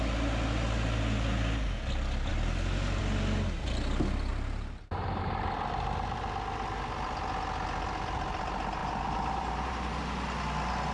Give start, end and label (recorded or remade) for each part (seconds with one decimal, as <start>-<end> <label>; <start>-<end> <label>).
0.0-4.3 recorded; 4.3-5.4 remade; 5.4-8.8 recorded; 8.8-10.0 remade; 10.0-10.9 recorded